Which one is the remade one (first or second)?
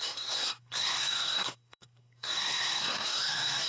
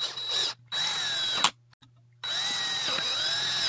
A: first